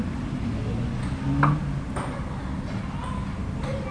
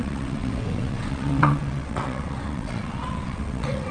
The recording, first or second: first